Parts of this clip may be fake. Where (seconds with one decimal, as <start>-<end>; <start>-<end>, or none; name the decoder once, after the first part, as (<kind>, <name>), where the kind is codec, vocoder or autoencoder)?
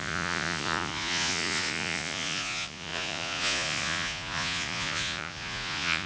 0.0-6.1 (vocoder, Vocos)